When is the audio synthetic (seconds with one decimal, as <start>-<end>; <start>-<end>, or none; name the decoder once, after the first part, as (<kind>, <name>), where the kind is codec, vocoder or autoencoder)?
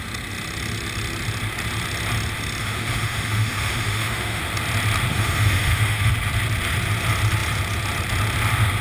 2.6-4.4 (autoencoder, DAC-VAE); 5.1-6.1